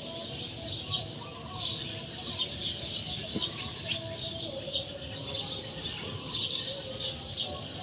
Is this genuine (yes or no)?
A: yes